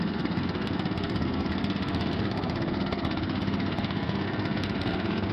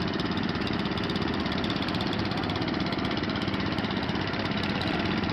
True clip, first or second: second